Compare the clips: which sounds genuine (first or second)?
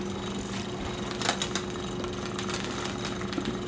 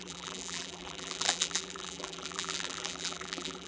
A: first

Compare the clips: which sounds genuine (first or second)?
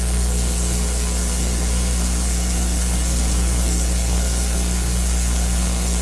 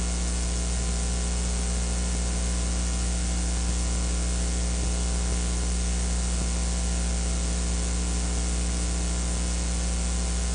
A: second